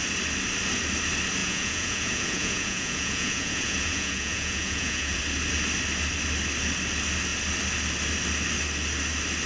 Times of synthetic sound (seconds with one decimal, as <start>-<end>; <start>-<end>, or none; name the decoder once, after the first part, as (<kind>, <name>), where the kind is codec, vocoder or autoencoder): 1.4-5.2 (vocoder, Vocos)